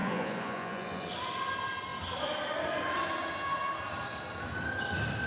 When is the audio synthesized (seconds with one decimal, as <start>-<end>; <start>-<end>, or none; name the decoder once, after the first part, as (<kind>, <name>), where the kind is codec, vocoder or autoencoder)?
0.0-1.1 (vocoder, Vocos)